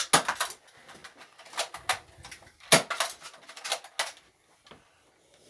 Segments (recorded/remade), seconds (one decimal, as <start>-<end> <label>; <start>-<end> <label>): 0.0-5.5 recorded